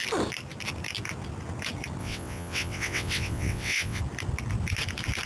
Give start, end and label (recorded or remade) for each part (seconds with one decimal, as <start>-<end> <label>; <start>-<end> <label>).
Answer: 0.0-2.0 recorded; 2.0-4.0 remade; 4.0-5.3 recorded